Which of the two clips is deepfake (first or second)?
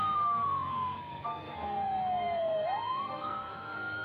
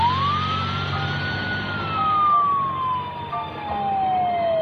first